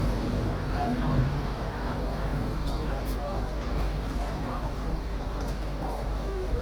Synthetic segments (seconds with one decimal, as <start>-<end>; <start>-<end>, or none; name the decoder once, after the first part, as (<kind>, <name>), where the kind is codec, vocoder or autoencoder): 0.0-6.6 (codec, DAC)